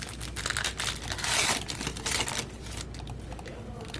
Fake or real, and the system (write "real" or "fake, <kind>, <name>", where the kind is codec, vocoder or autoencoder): real